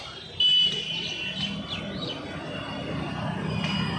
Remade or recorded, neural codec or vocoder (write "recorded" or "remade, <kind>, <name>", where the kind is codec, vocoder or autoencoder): recorded